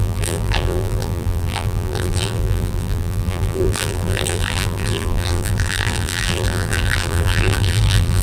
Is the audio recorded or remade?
remade